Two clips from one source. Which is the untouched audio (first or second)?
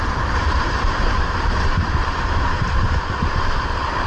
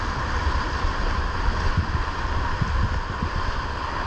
second